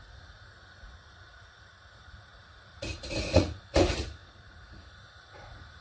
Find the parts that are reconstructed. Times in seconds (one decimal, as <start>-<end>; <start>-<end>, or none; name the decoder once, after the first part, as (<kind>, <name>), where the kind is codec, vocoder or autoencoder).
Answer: 0.0-5.8 (vocoder, Vocos)

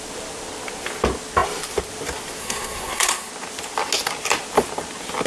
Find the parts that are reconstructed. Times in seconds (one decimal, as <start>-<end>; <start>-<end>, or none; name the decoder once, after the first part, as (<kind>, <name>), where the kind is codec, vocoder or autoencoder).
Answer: 2.4-3.3 (codec, SNAC)

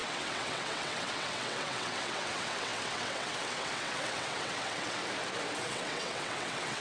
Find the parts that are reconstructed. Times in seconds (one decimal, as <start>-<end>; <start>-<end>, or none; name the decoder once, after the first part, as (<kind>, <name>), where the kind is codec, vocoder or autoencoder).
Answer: 0.0-5.0 (vocoder, WaveNeXt); 5.6-6.8

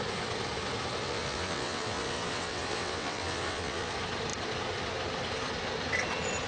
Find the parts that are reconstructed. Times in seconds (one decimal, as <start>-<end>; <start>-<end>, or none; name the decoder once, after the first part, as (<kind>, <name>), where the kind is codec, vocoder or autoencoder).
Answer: 1.0-3.9 (vocoder, WaveNeXt)

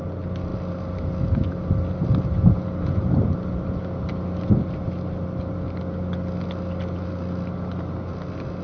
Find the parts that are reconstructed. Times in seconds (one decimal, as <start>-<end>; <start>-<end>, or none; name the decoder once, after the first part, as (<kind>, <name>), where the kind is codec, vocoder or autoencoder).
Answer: none

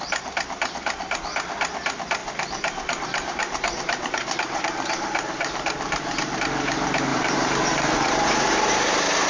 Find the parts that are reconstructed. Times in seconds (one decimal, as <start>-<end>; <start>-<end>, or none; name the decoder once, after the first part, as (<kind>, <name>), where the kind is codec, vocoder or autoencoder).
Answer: 2.2-6.4 (vocoder, BigVGAN v2); 7.1-9.3

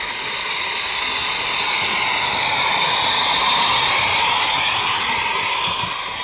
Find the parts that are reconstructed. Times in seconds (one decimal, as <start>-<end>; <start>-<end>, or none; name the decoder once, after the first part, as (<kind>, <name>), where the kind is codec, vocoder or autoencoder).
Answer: none